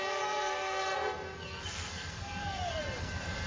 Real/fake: fake